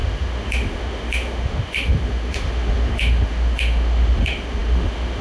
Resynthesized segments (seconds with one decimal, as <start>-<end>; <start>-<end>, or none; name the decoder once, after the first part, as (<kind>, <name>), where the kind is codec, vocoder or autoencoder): 0.0-5.2 (autoencoder, DAC-VAE)